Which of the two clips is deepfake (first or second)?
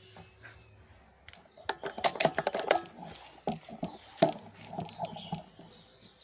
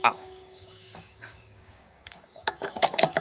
second